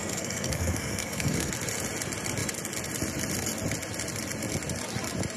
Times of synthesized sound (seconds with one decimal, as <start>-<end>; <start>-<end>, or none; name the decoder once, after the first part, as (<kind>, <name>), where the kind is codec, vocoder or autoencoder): 0.0-1.5 (codec, SNAC)